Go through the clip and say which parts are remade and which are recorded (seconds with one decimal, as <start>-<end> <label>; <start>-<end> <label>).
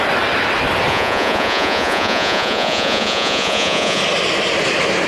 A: 0.0-0.9 recorded; 0.9-4.0 remade; 4.0-5.1 recorded